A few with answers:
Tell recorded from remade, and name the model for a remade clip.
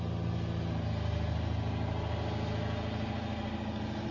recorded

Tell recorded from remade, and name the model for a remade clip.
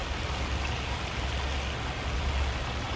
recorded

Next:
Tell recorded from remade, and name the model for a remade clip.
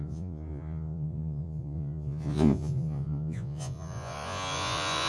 remade, vocoder, Vocos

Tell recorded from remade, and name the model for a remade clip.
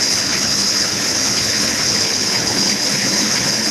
remade, codec, HILCodec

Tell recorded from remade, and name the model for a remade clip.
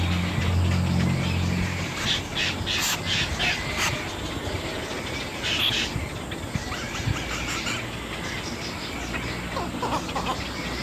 recorded